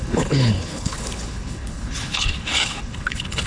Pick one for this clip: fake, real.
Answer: fake